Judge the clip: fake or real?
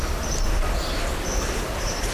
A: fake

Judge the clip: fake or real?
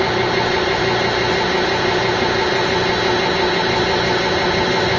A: real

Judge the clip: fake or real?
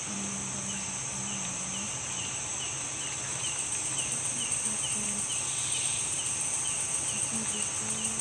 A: real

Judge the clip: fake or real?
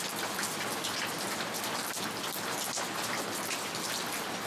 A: real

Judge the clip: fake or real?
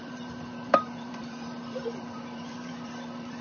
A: fake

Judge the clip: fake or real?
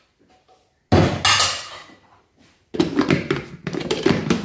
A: real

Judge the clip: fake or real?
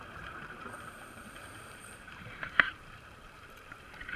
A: fake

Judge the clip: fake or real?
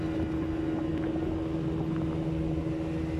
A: real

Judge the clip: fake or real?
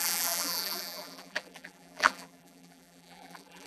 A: fake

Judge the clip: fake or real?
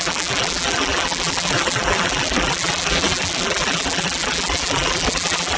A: fake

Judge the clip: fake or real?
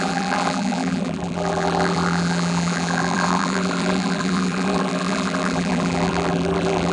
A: fake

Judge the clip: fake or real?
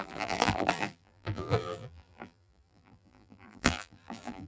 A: fake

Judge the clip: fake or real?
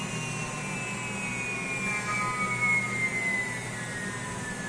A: real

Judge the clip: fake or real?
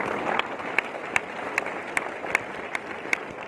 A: fake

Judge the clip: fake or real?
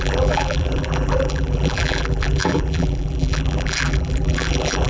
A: fake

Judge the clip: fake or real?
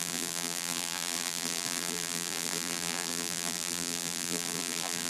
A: fake